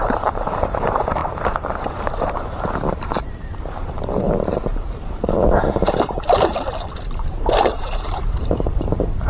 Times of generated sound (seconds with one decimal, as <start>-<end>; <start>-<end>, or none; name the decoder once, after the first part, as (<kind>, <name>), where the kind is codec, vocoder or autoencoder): 0.0-9.3 (vocoder, BigVGAN v2)